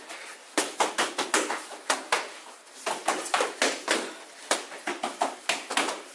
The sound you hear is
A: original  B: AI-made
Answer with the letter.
A